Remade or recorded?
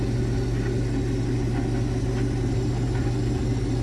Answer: recorded